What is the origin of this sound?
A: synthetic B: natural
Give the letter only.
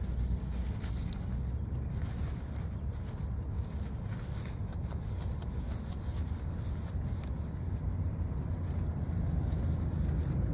B